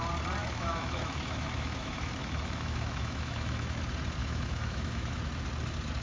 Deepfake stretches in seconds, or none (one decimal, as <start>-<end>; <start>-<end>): 0.4-3.8; 4.2-5.2